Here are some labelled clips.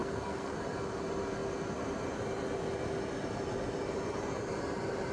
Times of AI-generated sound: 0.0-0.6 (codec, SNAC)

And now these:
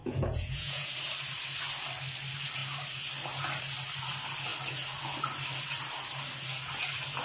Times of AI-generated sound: 0.0-0.9 (vocoder, Vocos)

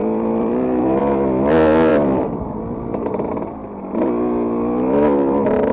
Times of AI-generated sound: 0.0-1.0 (vocoder, BigVGAN v2); 1.9-3.8

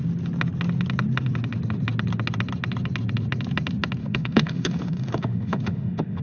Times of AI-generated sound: 4.0-6.2 (autoencoder, DAC-VAE)

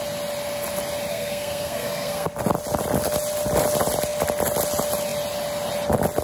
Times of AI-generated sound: 1.1-2.3 (codec, SNAC)

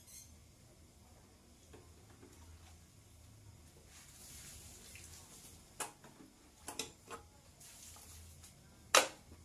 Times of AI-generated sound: none

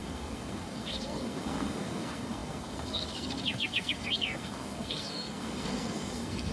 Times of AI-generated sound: 0.0-6.5 (codec, SNAC)

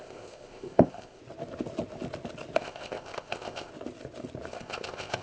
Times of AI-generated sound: 0.0-1.2 (codec, ZipCodec); 2.6-3.7; 4.5-5.2